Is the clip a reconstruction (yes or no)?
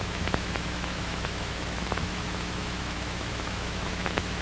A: yes